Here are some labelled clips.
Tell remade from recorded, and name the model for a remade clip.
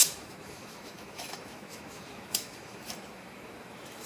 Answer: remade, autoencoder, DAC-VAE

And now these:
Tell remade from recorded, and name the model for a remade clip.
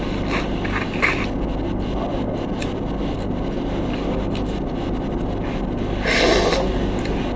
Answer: recorded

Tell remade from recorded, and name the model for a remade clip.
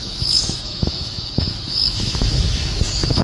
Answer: remade, autoencoder, DAC-VAE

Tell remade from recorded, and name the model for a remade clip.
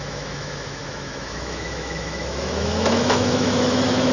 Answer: remade, autoencoder, DAC-VAE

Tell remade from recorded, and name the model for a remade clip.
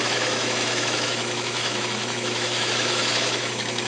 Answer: remade, autoencoder, DAC-VAE